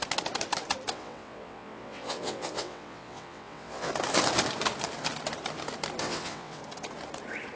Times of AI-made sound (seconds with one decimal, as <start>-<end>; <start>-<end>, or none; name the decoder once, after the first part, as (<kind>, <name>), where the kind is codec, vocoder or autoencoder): 0.9-3.9 (vocoder, WaveNeXt); 6.0-6.6